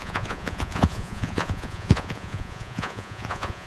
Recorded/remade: remade